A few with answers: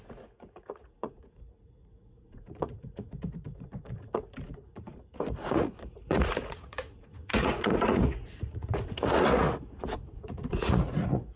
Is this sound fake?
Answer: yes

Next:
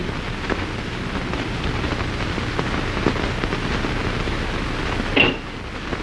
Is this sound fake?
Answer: no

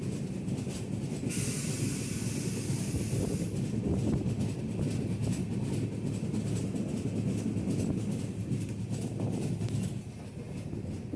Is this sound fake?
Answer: no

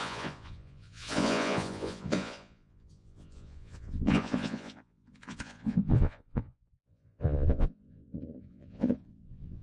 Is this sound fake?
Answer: yes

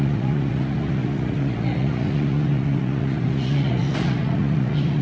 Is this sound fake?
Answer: yes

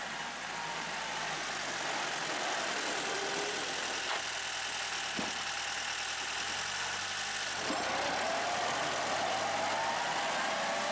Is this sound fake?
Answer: no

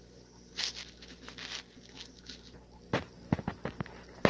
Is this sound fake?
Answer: no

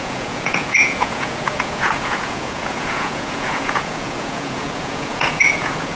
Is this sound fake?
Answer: yes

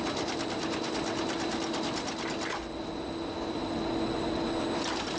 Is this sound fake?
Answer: no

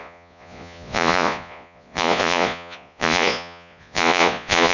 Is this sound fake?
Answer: yes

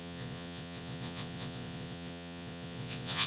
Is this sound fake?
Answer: yes